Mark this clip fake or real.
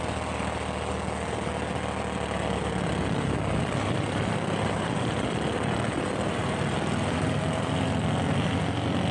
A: real